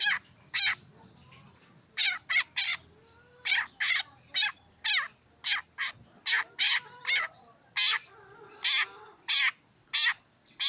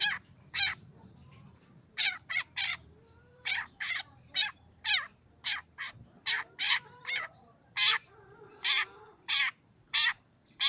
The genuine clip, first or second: first